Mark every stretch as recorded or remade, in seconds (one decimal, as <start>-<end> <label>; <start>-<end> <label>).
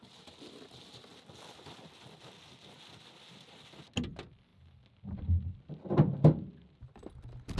0.0-7.6 recorded